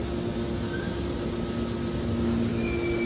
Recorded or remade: recorded